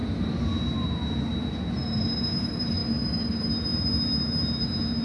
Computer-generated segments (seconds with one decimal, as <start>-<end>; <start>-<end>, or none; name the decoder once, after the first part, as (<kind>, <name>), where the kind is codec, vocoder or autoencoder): none